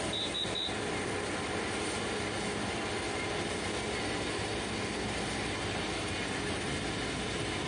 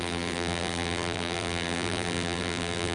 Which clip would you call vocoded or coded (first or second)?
second